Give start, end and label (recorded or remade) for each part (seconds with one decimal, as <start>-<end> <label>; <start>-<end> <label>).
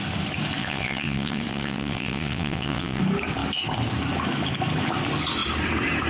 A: 0.0-0.6 recorded; 0.6-3.0 remade; 3.0-6.1 recorded